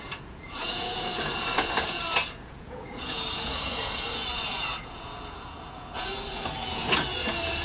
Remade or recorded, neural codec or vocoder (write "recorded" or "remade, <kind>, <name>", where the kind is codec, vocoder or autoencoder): remade, vocoder, Vocos